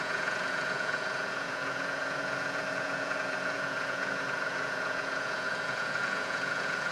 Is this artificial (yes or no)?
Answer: yes